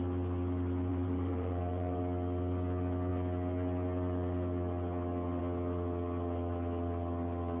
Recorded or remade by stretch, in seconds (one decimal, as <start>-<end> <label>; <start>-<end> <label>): 0.0-0.9 recorded; 0.9-2.0 remade; 2.0-7.6 recorded